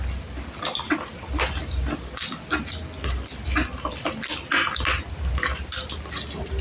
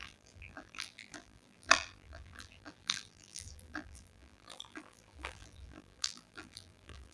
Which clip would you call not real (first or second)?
second